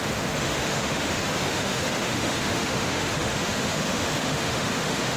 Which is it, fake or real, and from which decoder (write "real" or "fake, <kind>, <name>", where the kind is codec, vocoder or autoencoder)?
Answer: fake, autoencoder, DAC-VAE